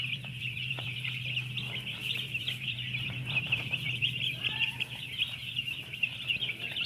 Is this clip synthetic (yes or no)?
yes